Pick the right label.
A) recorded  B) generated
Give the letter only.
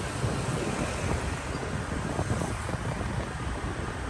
A